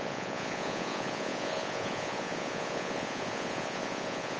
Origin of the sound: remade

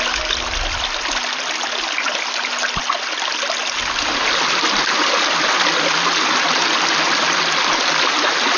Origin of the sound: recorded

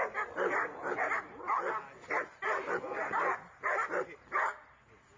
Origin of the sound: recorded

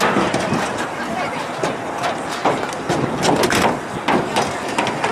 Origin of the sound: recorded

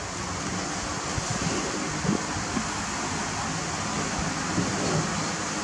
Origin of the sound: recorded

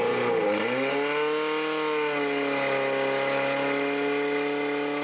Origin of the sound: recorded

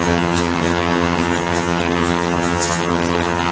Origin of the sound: remade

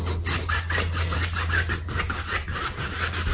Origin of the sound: recorded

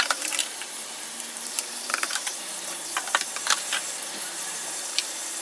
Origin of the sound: remade